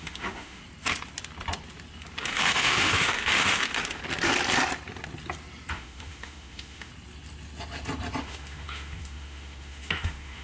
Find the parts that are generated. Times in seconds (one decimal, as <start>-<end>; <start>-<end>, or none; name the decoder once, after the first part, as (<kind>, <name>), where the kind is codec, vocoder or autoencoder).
0.0-0.6 (autoencoder, DAC-VAE); 2.2-4.0; 5.7-6.9; 8.2-10.4